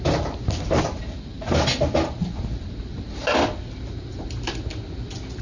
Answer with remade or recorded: recorded